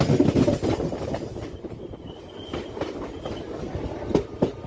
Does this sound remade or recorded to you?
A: recorded